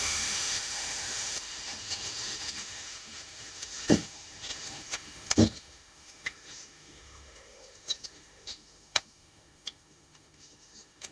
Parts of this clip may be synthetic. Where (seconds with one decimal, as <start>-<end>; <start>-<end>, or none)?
0.0-11.1